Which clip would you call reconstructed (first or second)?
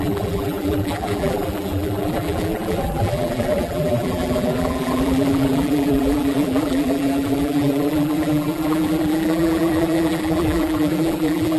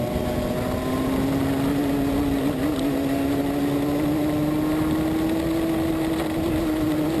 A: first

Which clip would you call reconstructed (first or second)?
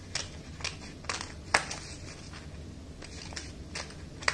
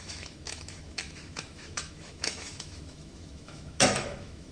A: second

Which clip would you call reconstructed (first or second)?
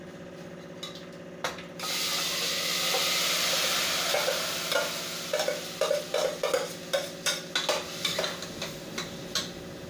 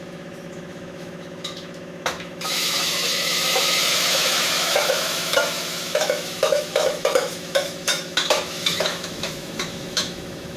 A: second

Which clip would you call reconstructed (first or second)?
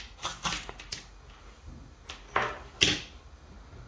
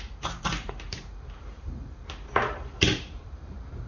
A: second